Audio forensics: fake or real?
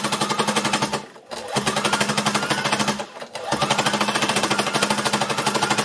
real